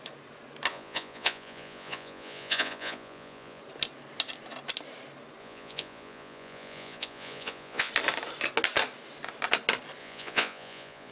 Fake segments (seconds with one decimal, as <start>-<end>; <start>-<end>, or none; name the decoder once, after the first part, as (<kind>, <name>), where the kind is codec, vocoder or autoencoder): 0.7-3.6 (vocoder, Vocos); 5.4-7.9; 10.0-11.1